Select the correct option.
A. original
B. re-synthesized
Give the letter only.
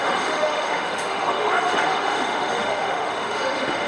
B